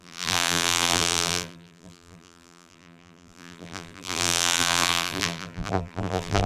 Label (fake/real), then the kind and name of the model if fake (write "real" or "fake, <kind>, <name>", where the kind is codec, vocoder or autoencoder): fake, vocoder, BigVGAN v2